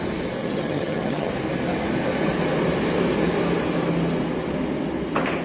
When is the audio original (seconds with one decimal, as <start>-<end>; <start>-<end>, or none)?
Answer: 0.0-0.4; 1.3-5.4